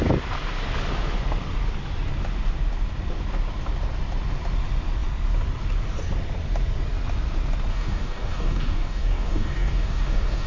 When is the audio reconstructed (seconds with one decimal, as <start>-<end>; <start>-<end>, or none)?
7.7-10.5